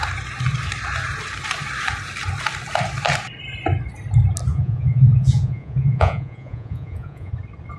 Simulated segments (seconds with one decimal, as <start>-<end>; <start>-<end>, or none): 4.5-7.3